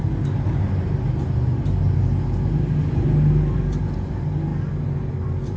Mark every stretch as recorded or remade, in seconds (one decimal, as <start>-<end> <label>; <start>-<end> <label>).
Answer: 0.0-5.6 recorded